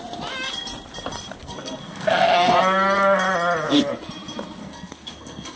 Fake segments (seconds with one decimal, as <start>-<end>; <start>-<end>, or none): 1.4-2.5; 4.6-5.6